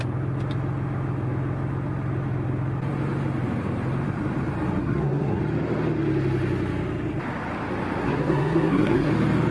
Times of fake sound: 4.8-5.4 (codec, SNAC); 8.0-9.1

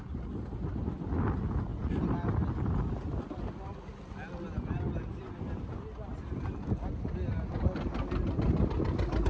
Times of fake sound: none

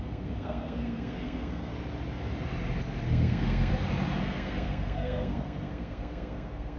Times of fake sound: 0.0-1.7 (codec, SNAC); 3.0-3.7; 4.2-6.8

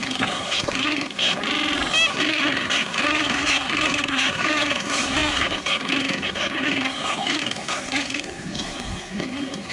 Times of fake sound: 0.0-1.4 (codec, SNAC); 2.1-9.7

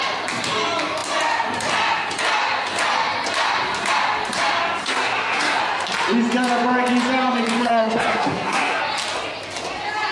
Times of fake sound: 4.8-5.6 (codec, SNAC); 7.6-8.8

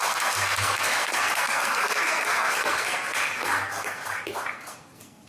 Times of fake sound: 0.0-5.3 (codec, SNAC)

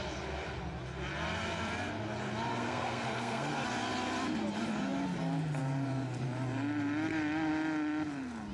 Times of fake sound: 2.5-3.5 (codec, SNAC)